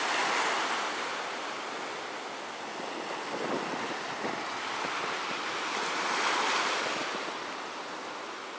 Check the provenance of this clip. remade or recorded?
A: recorded